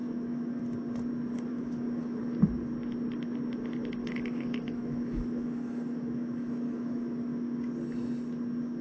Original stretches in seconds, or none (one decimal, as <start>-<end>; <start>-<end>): 0.6-1.5; 2.2-4.0; 7.7-8.8

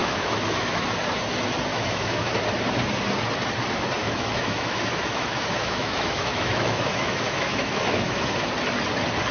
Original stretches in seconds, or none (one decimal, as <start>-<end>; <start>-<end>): 0.9-1.7; 2.3-4.0; 8.5-9.3

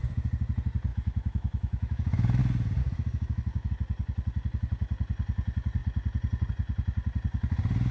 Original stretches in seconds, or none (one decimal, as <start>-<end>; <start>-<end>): 0.0-0.9; 2.4-2.8; 3.7-7.9